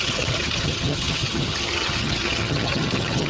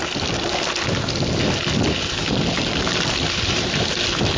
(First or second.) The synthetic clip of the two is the first